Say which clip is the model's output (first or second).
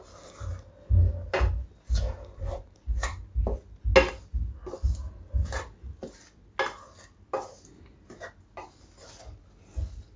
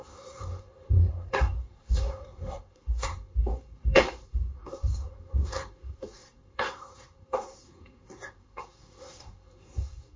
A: second